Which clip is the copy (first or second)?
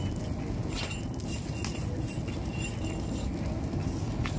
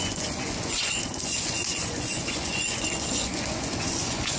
second